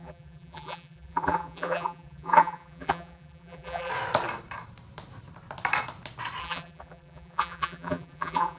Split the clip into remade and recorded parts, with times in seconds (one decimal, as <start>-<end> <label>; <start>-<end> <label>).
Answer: 0.0-3.9 remade; 3.9-6.4 recorded; 6.4-8.6 remade